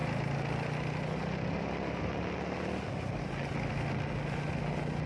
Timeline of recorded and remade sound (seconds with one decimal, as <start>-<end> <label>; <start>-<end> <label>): 0.0-5.1 recorded